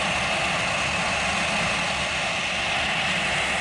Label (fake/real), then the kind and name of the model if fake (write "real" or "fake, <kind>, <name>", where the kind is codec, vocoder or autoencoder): real